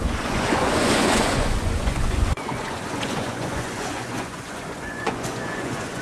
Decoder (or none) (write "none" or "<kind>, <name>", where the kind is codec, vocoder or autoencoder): vocoder, Vocos